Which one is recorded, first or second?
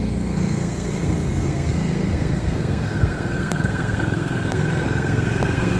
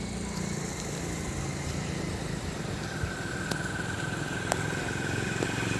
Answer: second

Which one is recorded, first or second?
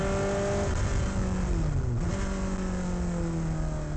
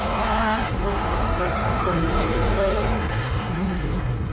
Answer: first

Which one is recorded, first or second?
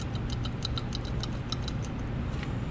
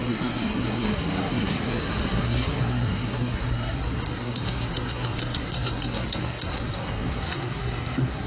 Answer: first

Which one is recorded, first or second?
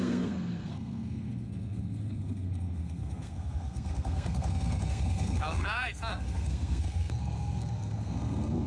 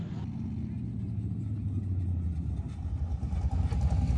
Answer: second